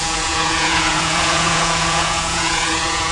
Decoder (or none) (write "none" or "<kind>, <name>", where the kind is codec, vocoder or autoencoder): vocoder, Vocos